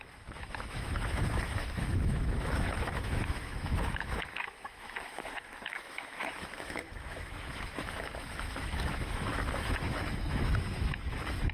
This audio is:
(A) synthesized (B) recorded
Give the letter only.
A